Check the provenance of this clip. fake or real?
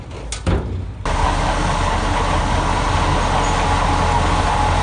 real